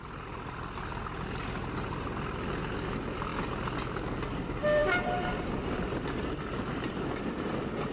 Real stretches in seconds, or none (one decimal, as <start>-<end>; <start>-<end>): 0.0-4.8; 6.0-7.9